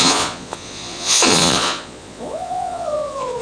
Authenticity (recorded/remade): remade